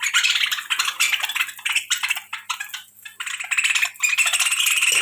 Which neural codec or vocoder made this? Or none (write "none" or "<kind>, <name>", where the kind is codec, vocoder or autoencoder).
none